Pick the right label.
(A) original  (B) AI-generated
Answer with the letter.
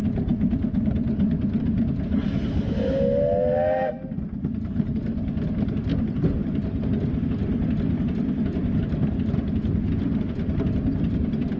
A